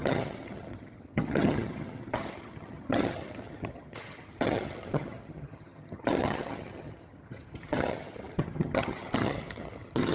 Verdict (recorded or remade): remade